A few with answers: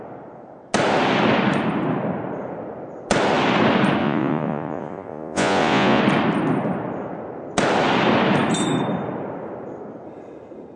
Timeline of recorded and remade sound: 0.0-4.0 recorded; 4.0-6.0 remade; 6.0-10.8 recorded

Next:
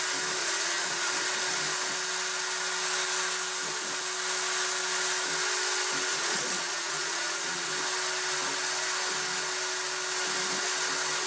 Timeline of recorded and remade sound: 0.0-0.4 recorded; 0.4-1.1 remade; 1.1-6.1 recorded; 6.1-7.7 remade; 7.7-11.3 recorded

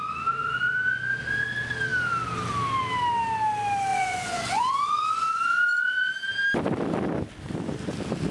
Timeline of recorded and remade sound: 0.0-1.2 remade; 1.2-3.9 recorded; 3.9-6.1 remade; 6.1-8.3 recorded